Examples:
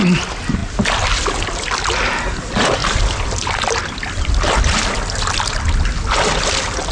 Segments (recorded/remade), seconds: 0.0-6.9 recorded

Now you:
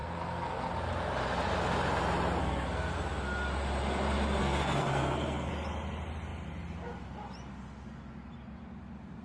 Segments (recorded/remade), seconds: 0.0-0.7 remade; 0.7-2.4 recorded; 2.4-3.0 remade; 3.0-4.4 recorded; 4.4-5.5 remade; 5.5-9.2 recorded

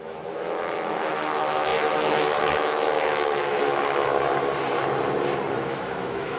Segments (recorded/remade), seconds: 0.0-4.1 remade; 4.1-5.5 recorded; 5.5-6.4 remade

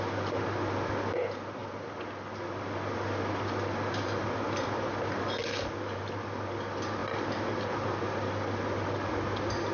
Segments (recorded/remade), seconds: 0.0-9.7 recorded

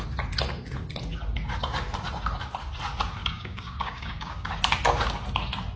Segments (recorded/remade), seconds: 0.0-3.2 recorded; 3.2-4.5 remade; 4.5-5.8 recorded

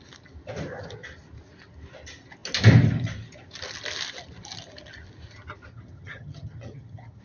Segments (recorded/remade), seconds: 0.0-5.7 recorded; 5.7-7.2 remade

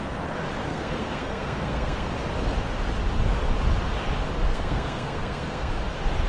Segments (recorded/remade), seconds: 0.0-0.7 recorded; 0.7-2.1 remade; 2.1-4.5 recorded; 4.5-5.7 remade; 5.7-6.3 recorded

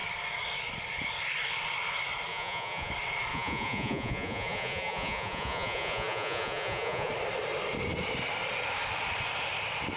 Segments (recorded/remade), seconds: 0.0-2.3 recorded; 2.3-2.9 remade; 2.9-3.3 recorded; 3.3-7.1 remade; 7.1-10.0 recorded